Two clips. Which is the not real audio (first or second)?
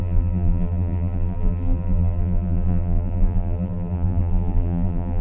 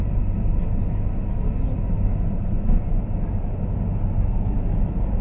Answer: first